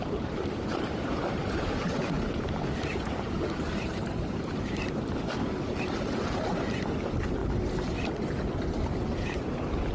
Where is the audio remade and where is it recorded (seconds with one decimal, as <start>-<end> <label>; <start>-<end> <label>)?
0.0-7.4 remade; 7.4-9.0 recorded; 9.0-9.9 remade